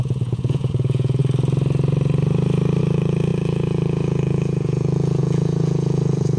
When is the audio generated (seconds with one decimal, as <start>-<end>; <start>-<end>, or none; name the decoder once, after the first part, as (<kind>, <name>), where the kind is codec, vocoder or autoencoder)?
0.0-1.2 (vocoder, Vocos); 2.8-6.4